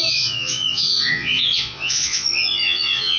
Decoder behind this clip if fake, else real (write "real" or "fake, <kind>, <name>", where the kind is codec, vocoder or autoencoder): fake, vocoder, Vocos